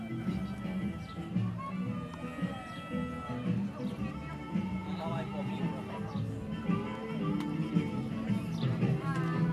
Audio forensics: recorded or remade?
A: recorded